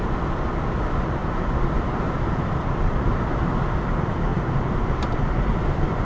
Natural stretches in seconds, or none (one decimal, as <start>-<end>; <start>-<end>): 0.0-1.2; 3.4-4.3